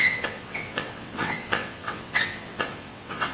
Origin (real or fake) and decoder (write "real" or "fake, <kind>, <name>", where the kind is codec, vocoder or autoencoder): fake, vocoder, WaveNeXt